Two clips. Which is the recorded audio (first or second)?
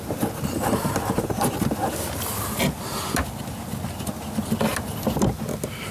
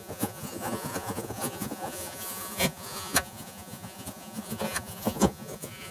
first